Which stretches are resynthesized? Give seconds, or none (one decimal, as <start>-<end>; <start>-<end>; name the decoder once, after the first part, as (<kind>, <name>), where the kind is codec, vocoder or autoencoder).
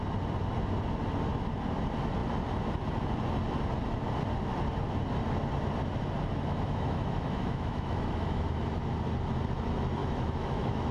6.3-8.6 (autoencoder, DAC-VAE); 10.0-10.9